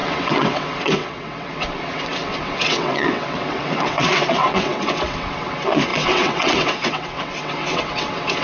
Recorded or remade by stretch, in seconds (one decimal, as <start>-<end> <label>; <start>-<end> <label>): 0.0-8.4 remade